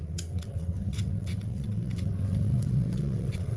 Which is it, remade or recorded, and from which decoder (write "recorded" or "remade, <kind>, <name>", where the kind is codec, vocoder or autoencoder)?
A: remade, vocoder, WaveNeXt